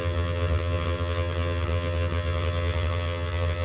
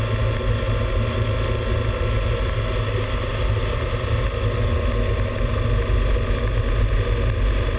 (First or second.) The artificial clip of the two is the first